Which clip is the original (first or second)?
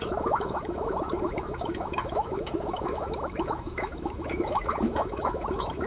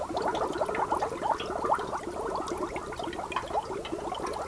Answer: second